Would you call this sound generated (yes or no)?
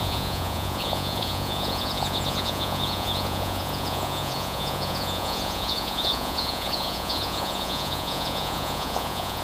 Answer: yes